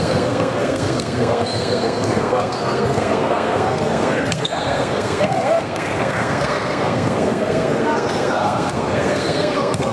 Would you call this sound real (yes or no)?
no